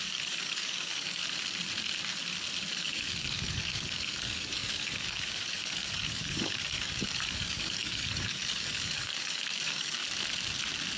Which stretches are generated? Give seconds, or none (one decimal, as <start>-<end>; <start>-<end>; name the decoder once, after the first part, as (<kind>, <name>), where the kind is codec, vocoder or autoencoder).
0.0-1.2 (codec, DAC); 2.7-10.0